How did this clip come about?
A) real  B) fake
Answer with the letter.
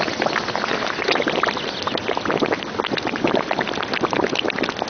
A